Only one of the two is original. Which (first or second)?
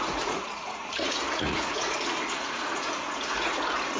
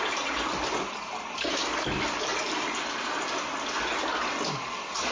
second